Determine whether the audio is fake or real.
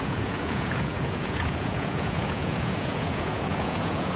fake